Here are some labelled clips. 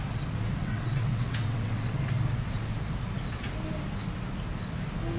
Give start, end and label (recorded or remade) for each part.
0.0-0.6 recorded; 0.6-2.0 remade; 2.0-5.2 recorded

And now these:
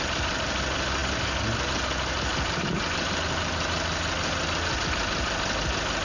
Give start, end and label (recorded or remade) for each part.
0.0-6.0 recorded

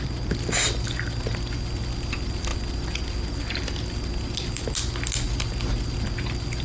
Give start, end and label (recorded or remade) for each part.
0.0-6.6 recorded